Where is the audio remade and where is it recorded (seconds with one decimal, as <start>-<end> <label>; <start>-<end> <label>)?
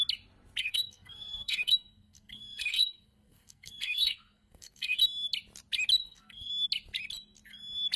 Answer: 0.0-0.6 recorded; 0.6-5.0 remade; 5.0-6.0 recorded; 6.0-6.5 remade; 6.5-8.0 recorded